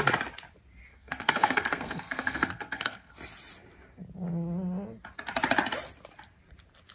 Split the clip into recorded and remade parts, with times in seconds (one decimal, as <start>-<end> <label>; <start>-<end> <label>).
0.0-0.9 recorded; 0.9-3.1 remade; 3.1-6.9 recorded